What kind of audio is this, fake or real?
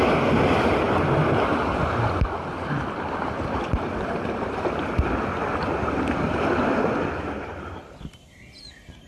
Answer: fake